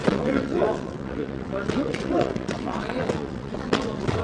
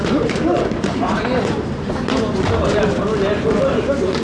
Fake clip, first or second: first